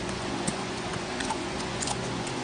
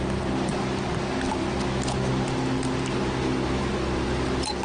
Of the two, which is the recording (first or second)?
second